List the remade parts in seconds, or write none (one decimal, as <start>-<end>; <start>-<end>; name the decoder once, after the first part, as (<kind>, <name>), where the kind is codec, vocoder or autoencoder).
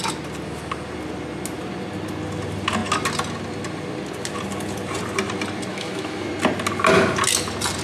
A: 5.7-6.3 (autoencoder, DAC-VAE)